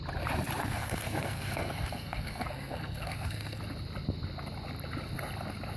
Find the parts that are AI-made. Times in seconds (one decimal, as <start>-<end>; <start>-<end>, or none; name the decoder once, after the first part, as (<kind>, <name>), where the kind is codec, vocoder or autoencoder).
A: 0.6-3.6 (codec, SNAC)